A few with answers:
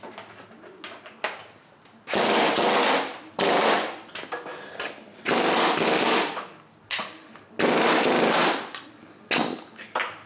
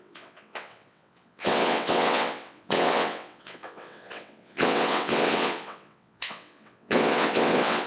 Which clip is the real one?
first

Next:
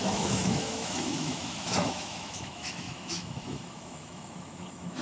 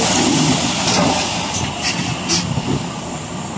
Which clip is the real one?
second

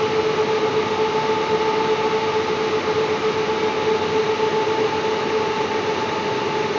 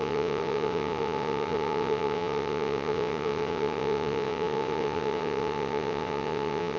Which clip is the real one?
first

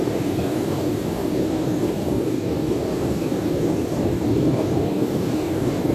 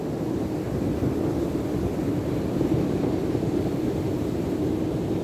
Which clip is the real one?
second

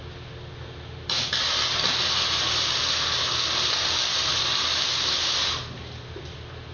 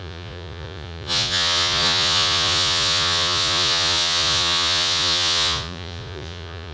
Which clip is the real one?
first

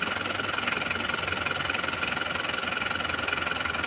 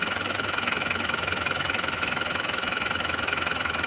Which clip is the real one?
first